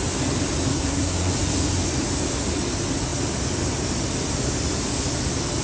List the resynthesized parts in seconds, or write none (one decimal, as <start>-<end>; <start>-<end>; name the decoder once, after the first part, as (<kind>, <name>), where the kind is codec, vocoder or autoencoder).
0.7-1.3 (codec, SNAC)